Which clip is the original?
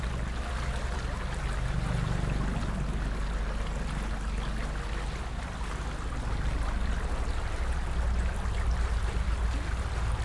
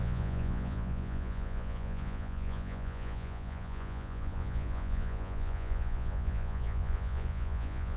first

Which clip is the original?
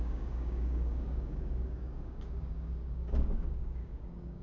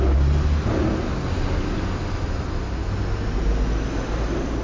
second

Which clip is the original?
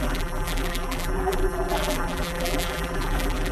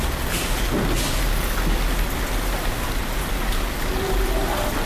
second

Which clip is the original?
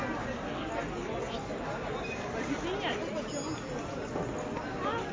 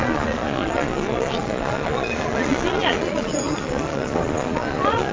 first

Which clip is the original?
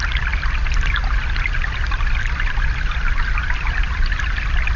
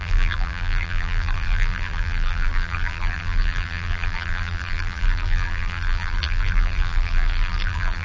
first